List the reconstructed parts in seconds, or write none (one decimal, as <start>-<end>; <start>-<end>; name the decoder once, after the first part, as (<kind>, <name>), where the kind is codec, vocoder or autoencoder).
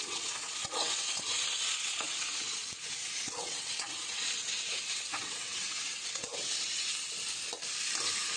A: 0.0-6.9 (vocoder, WaveNeXt)